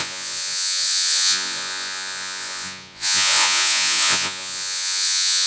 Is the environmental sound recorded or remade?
remade